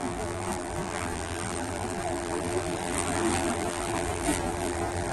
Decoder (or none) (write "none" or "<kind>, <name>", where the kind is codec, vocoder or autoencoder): vocoder, BigVGAN v2